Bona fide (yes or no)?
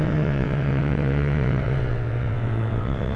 no